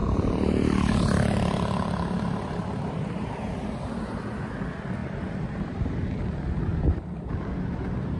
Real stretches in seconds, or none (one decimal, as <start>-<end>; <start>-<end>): 3.5-5.0; 5.9-8.2